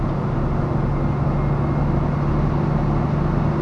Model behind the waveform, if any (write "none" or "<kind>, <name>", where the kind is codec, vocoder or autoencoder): none